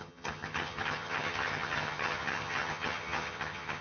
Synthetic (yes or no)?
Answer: yes